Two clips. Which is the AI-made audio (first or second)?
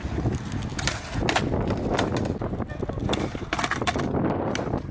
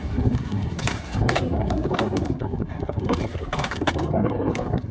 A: second